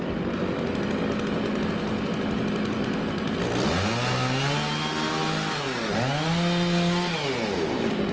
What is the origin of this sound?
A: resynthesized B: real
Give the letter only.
B